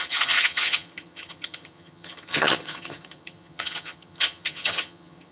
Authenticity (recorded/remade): remade